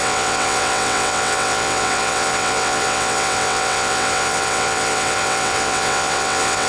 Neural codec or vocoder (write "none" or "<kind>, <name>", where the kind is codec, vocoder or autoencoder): vocoder, WaveNeXt